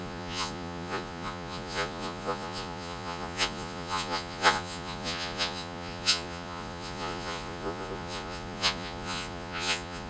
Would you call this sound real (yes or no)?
no